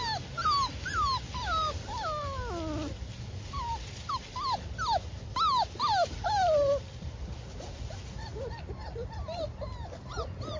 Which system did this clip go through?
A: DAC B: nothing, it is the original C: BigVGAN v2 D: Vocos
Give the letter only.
B